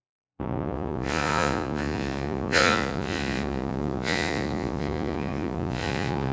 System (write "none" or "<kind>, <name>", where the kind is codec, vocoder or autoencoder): vocoder, Vocos